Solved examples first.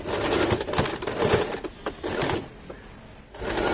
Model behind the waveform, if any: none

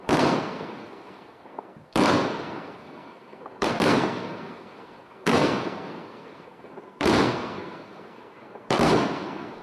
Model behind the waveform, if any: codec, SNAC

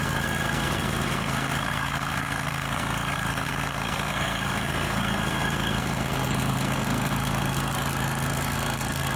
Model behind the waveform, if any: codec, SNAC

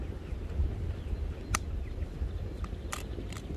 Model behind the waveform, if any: none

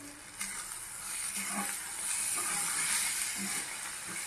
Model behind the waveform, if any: none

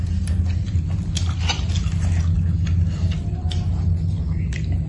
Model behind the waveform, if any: none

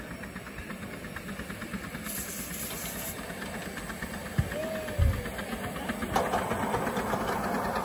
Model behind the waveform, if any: none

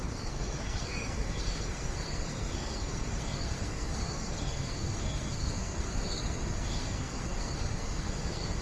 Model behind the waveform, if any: codec, SNAC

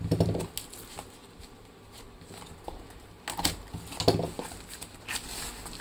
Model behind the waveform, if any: none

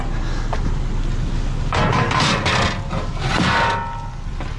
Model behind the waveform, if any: none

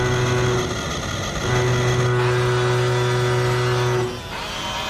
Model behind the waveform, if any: none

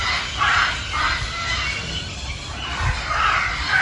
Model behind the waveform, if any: none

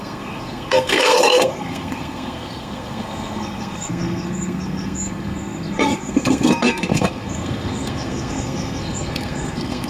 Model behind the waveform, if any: codec, SNAC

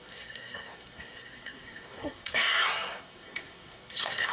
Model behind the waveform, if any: codec, SNAC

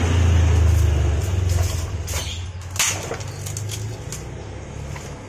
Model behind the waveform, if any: none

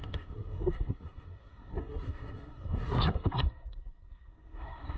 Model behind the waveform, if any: codec, SNAC